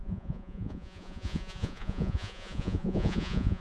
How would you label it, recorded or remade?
remade